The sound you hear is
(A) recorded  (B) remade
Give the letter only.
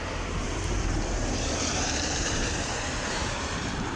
B